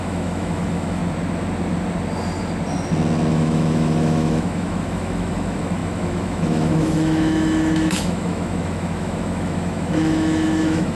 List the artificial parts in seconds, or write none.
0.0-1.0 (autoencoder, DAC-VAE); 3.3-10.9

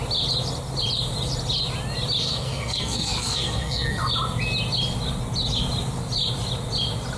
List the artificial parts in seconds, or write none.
2.2-4.1 (codec, SNAC)

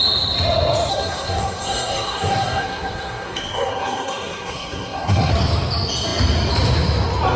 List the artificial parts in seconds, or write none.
0.9-5.3 (codec, SNAC)

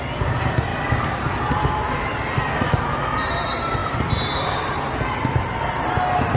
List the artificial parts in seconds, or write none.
none

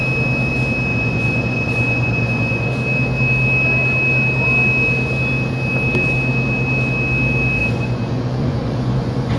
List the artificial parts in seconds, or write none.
0.9-2.7 (vocoder, Vocos); 7.6-9.4

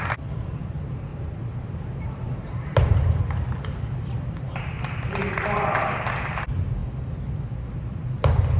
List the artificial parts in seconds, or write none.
1.1-4.6 (vocoder, BigVGAN v2)

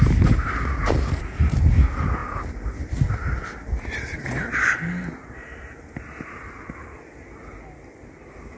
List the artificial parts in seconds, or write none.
none

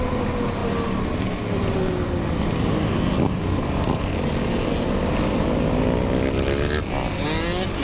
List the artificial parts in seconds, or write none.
none